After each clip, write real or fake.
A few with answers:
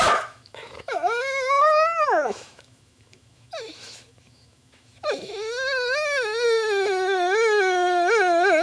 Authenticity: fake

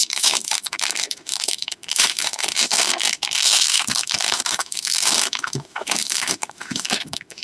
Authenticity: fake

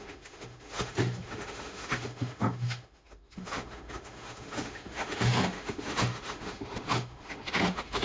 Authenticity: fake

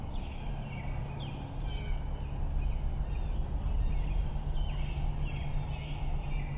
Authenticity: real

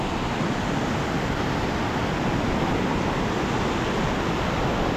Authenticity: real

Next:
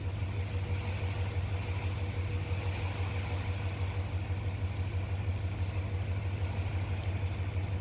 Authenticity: real